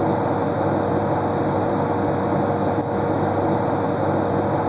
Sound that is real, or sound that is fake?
real